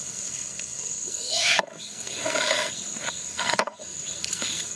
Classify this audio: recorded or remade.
remade